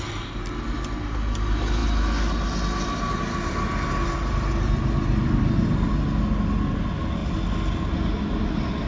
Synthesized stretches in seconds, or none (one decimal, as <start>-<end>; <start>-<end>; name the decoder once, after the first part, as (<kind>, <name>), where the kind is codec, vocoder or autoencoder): none